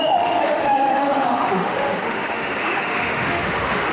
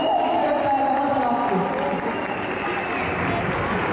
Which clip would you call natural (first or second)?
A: second